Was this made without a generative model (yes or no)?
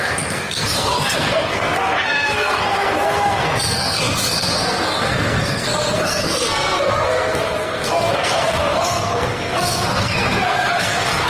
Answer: no